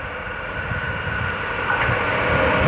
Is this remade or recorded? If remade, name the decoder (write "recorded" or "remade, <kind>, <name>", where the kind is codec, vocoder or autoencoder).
recorded